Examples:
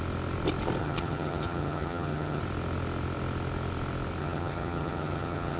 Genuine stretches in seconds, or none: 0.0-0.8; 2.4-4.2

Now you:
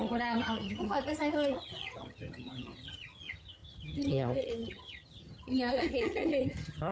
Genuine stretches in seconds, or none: none

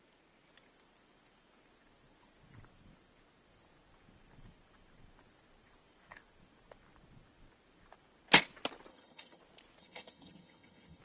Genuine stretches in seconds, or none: 0.0-8.9; 9.4-9.8